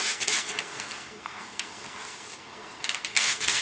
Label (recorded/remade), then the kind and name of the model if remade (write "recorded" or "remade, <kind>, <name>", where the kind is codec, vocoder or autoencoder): remade, codec, SNAC